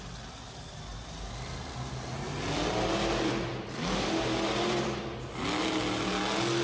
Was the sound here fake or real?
real